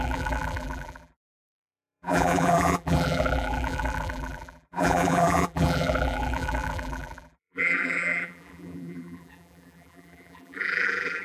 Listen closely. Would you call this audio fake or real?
fake